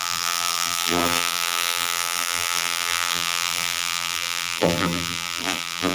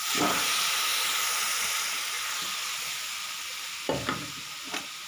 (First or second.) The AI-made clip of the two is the first